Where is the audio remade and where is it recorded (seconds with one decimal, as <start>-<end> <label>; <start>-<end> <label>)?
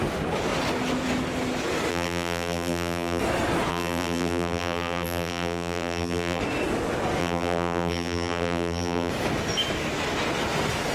0.0-1.9 recorded; 1.9-3.2 remade; 3.2-3.7 recorded; 3.7-6.4 remade; 6.4-7.2 recorded; 7.2-9.1 remade; 9.1-10.9 recorded